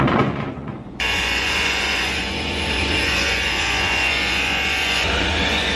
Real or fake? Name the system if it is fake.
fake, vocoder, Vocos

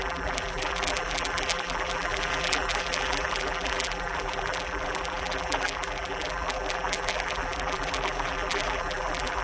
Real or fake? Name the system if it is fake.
fake, vocoder, BigVGAN v2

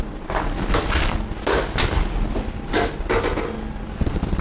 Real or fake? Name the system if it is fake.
real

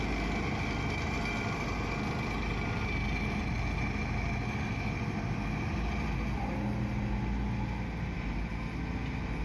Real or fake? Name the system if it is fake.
real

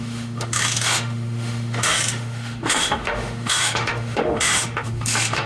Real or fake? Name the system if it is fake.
fake, autoencoder, DAC-VAE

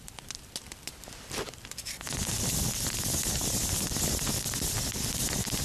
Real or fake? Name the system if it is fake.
fake, vocoder, BigVGAN v2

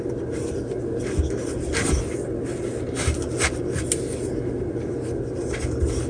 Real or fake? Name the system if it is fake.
real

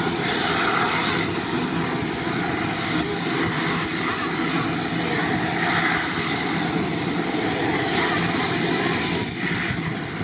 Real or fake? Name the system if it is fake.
real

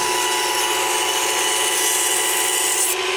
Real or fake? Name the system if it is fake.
real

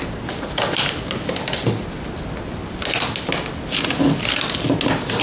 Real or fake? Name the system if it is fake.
real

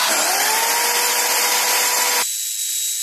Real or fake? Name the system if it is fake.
real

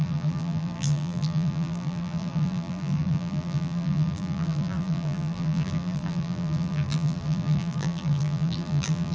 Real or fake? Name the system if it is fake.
fake, vocoder, BigVGAN v2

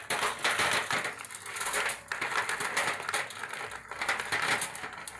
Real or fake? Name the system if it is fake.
real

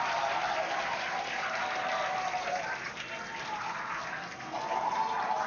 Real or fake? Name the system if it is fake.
real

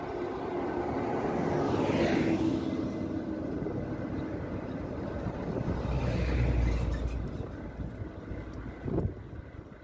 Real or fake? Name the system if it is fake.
real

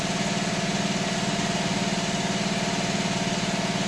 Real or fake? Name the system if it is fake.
real